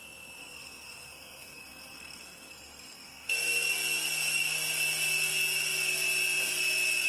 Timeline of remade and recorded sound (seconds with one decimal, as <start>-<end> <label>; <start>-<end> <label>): 0.0-0.4 recorded; 0.4-3.3 remade; 3.3-7.1 recorded